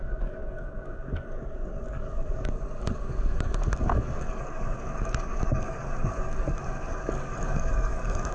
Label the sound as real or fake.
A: fake